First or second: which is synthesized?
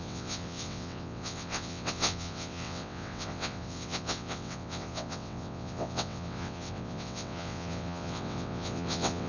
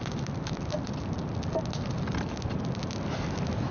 first